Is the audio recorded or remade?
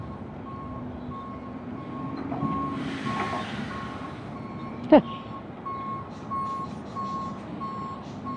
recorded